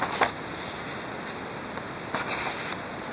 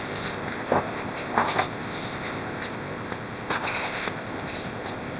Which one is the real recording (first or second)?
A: first